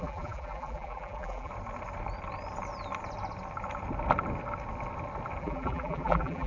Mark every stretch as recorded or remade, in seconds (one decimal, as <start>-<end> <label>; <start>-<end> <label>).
0.0-1.5 remade; 1.5-5.4 recorded; 5.4-6.5 remade